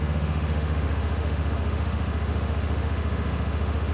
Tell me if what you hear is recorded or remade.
remade